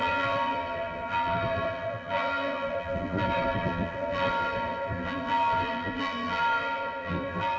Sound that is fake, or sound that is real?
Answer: fake